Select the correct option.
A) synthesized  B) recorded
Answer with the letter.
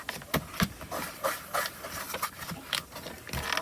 B